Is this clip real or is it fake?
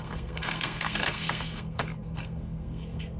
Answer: fake